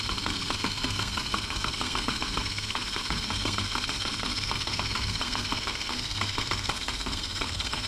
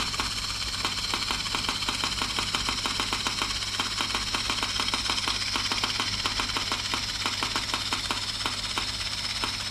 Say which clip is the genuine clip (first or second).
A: second